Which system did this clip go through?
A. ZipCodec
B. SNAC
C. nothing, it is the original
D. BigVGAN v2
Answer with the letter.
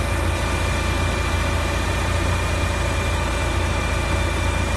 C